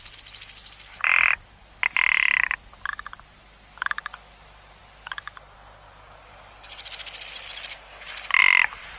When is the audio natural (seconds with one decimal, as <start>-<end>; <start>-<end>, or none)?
0.0-9.0